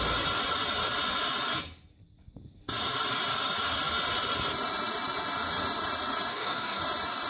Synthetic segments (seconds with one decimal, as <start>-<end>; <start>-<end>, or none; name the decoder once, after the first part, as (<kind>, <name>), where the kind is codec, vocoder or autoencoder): 6.3-6.8 (codec, DAC)